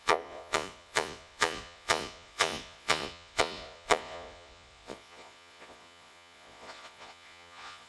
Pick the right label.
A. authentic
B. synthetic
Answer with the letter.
B